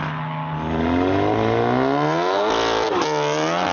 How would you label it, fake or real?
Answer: real